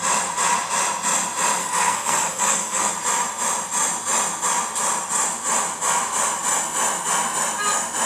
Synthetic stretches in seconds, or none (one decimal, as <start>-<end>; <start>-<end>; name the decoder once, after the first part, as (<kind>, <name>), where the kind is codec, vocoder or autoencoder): 1.6-2.9 (codec, SNAC)